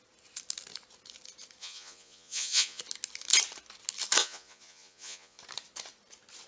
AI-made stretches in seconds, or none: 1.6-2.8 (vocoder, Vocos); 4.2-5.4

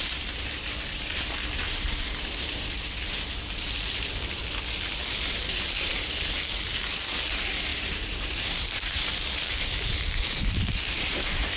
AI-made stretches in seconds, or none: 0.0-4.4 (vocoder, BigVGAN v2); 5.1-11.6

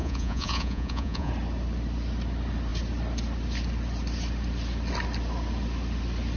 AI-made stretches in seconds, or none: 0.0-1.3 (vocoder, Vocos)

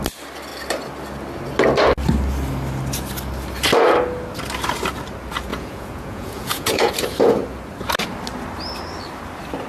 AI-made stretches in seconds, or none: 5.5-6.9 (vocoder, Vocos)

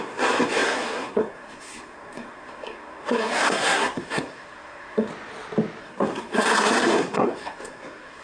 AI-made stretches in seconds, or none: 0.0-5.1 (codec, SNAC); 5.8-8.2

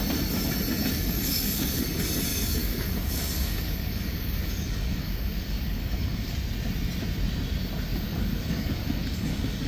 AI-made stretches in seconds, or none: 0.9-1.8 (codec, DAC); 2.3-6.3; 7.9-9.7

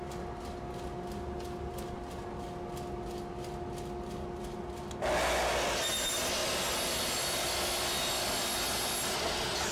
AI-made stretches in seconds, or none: none

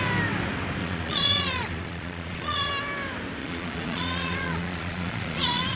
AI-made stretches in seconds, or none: 0.8-2.7 (vocoder, Vocos); 3.4-5.8